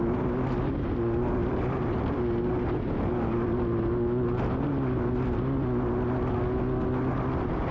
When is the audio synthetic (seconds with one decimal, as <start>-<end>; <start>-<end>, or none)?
1.4-2.2